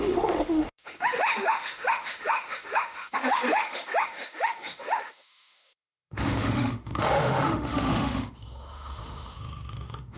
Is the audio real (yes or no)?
no